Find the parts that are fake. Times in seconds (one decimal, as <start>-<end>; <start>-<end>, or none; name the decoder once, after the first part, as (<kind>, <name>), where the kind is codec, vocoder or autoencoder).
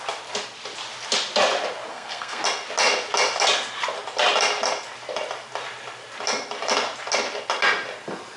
1.9-2.4 (codec, SNAC)